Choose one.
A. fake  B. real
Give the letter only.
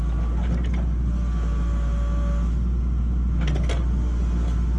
B